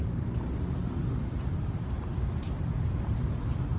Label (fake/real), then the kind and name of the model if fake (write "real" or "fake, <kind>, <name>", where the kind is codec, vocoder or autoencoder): real